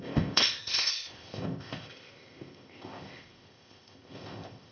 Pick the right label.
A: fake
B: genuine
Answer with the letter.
A